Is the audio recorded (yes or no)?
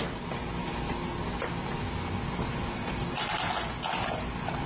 yes